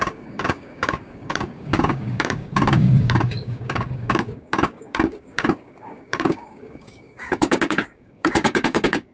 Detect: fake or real fake